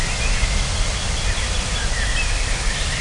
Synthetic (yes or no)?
no